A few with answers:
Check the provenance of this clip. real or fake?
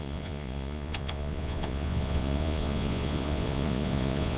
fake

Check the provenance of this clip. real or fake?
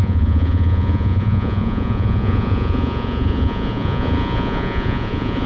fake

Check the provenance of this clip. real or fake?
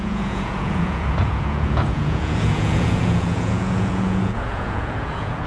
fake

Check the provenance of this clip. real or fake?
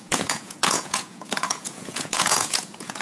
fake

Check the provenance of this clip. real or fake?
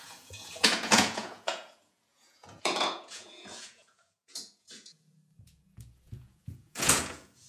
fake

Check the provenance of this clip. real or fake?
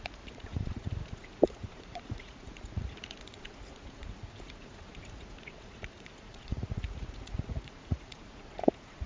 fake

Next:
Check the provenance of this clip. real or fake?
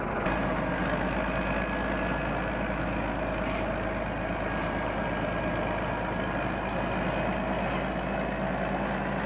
real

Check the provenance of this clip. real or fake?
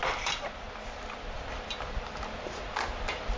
real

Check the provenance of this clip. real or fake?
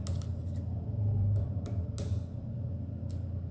real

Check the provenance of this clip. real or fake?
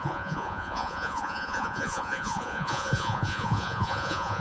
fake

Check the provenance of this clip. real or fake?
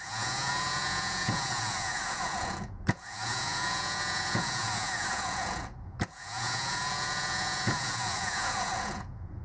fake